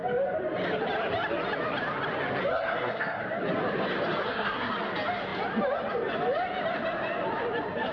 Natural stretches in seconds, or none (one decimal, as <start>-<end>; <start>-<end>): 0.0-2.5; 3.2-4.2; 4.7-7.9